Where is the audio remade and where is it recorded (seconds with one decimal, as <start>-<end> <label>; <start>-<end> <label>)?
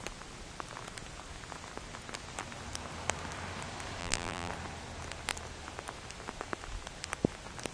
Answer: 0.0-4.0 recorded; 4.0-4.5 remade; 4.5-7.7 recorded